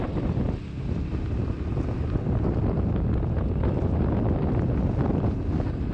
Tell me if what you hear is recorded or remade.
recorded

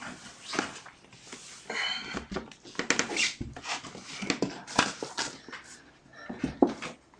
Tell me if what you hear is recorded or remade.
recorded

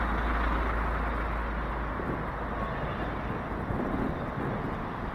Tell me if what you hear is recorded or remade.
recorded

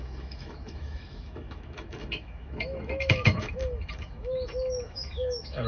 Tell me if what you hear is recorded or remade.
remade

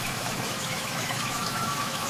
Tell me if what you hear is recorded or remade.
remade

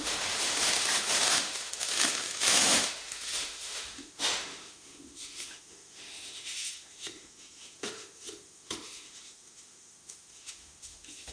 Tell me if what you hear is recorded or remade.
remade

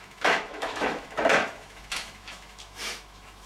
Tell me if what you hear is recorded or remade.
remade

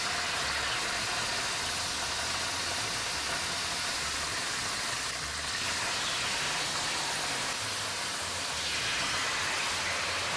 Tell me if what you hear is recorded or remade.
recorded